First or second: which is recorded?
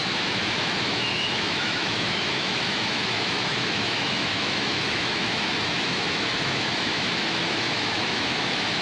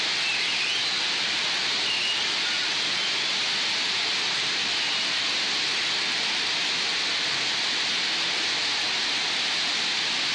second